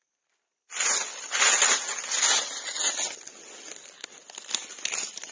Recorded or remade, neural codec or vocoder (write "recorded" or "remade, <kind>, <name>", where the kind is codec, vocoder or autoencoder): recorded